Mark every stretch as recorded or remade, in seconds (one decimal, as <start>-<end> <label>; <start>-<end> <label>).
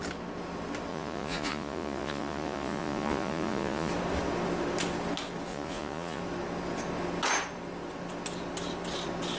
0.0-0.9 recorded; 0.9-3.9 remade; 3.9-5.5 recorded; 5.5-6.2 remade; 6.2-9.4 recorded